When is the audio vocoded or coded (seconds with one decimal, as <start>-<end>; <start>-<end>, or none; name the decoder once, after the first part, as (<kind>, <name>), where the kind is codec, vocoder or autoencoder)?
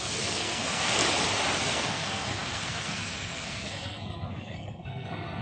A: 0.0-1.0 (codec, SNAC); 1.6-5.4